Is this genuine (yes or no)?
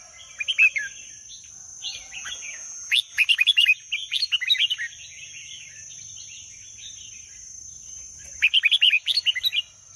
yes